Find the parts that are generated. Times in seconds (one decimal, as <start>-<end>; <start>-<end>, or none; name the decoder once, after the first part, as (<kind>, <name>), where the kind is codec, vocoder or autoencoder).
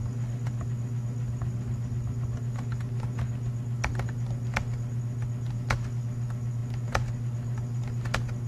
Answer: none